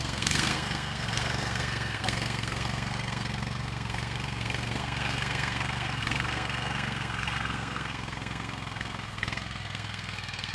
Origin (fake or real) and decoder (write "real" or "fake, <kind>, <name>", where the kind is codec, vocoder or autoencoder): fake, codec, SNAC